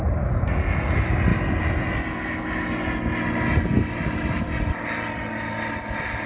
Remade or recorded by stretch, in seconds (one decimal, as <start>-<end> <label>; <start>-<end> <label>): 0.0-6.3 recorded